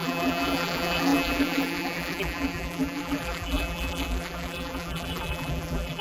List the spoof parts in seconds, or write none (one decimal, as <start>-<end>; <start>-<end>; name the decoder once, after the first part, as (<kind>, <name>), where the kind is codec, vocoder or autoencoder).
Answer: 0.0-6.0 (vocoder, BigVGAN v2)

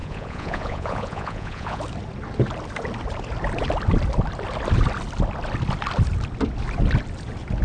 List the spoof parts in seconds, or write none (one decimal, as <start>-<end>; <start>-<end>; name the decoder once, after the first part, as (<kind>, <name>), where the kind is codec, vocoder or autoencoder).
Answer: 0.0-1.8 (vocoder, Vocos)

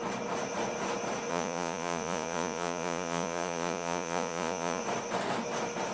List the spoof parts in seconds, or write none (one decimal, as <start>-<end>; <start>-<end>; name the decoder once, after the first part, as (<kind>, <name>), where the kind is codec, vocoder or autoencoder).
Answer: 1.3-4.8 (vocoder, Vocos)

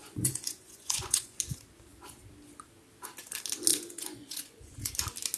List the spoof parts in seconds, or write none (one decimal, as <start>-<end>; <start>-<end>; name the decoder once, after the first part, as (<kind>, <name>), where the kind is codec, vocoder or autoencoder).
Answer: 0.0-1.4 (vocoder, Vocos); 3.7-4.9